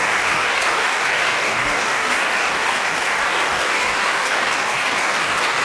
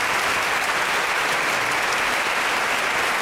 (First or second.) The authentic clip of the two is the second